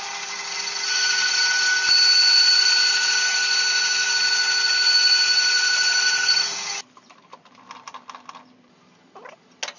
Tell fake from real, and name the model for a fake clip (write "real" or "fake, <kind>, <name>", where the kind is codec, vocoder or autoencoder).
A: real